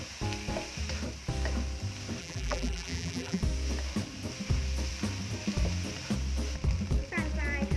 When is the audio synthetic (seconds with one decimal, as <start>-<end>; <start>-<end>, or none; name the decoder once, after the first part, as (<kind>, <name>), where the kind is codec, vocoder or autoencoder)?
2.2-3.4 (vocoder, BigVGAN v2)